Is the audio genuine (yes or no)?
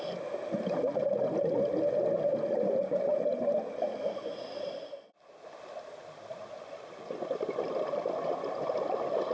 yes